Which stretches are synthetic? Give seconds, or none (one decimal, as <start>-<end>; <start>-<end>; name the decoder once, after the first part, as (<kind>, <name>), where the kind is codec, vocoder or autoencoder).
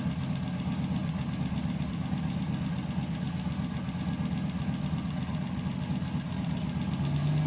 none